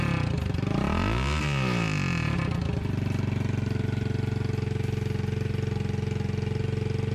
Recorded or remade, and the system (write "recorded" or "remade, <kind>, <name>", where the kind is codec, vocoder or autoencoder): recorded